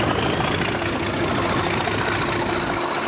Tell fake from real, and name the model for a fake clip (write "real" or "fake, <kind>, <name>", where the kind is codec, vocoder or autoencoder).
real